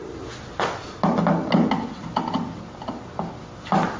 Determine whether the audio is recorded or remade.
recorded